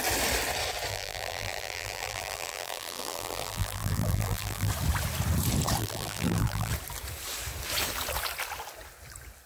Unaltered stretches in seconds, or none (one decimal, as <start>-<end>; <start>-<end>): 0.0-0.9; 4.7-5.8; 6.7-9.5